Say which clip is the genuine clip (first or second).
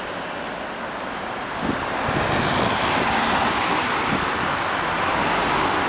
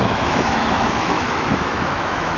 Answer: first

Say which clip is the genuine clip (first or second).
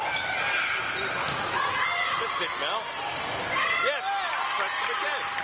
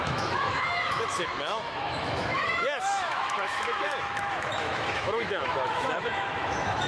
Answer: first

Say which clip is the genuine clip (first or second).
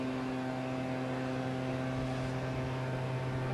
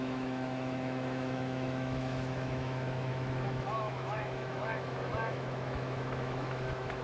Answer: first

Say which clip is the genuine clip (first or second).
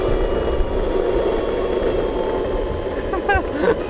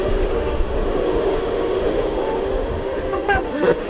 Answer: first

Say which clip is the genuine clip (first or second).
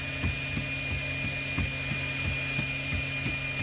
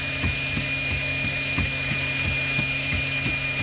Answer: first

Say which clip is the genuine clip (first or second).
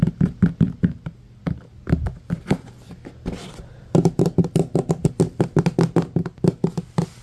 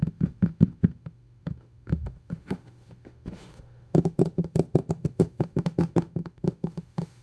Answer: first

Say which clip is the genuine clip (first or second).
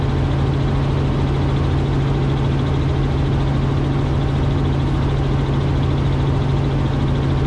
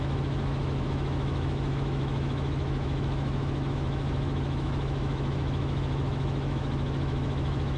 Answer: first